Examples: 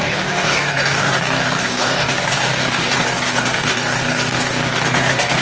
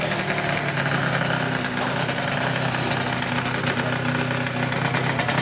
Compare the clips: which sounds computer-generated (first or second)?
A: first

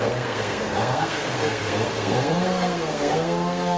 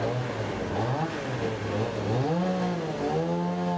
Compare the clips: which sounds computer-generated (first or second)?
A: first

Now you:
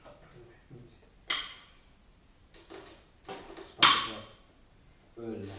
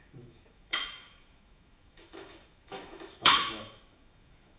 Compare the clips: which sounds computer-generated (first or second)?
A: second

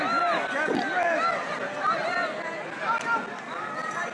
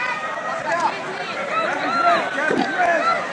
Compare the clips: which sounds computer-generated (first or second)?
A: second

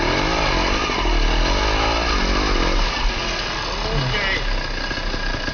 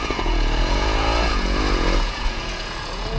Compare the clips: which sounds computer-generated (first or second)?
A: second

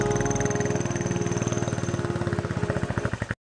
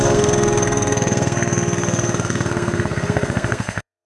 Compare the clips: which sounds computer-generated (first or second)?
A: second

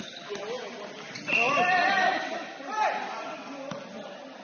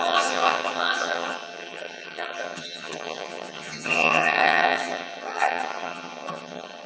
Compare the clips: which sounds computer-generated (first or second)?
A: second